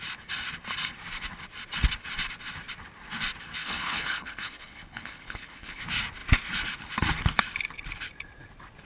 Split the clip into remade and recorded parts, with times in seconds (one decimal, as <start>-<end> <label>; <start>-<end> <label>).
0.0-3.6 recorded; 3.6-5.8 remade; 5.8-8.8 recorded